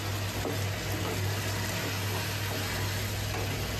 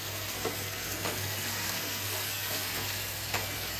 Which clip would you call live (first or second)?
first